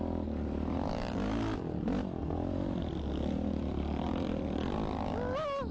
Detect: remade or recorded recorded